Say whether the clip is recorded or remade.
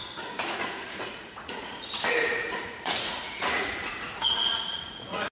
remade